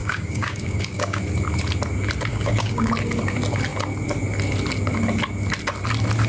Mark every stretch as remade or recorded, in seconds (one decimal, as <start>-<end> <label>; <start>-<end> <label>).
0.0-1.2 remade; 1.2-2.3 recorded; 2.3-2.9 remade; 2.9-6.3 recorded